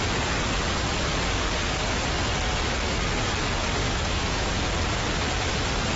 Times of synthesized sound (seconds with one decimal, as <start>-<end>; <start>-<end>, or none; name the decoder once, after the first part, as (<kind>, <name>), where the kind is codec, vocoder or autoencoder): 3.8-4.5 (autoencoder, DAC-VAE)